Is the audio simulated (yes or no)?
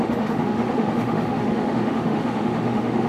yes